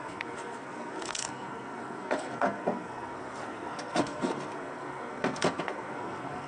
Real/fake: fake